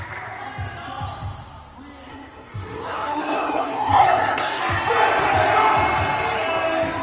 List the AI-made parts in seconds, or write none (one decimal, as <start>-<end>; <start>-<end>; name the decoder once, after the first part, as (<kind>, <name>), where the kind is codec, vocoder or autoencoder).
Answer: 2.1-4.6 (codec, SNAC)